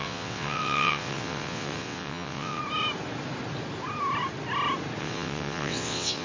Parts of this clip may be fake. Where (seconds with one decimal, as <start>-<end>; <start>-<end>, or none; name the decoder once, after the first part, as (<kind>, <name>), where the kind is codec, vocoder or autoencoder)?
0.0-2.6 (vocoder, WaveNeXt); 5.0-6.2